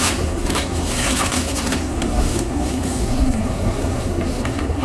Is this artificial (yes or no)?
yes